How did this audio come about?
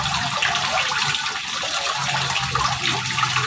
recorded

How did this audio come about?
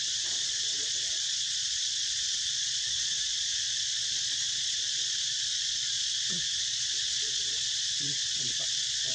remade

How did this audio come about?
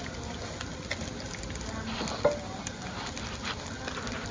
recorded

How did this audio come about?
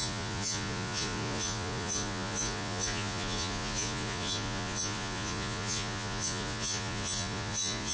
remade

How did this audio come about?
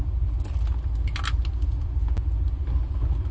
recorded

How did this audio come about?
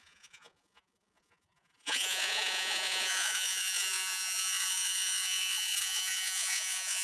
remade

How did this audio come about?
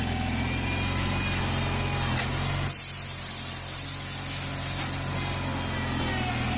recorded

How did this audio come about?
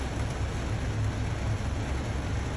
recorded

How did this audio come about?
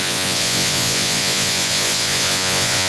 remade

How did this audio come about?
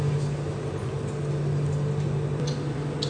recorded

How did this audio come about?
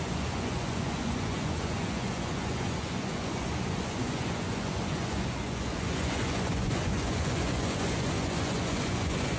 remade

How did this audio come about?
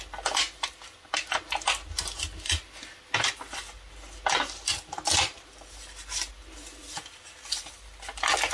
recorded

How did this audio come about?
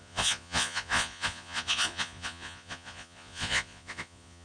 remade